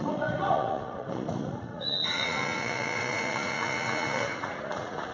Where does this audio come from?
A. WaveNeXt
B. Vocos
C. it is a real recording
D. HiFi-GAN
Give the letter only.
B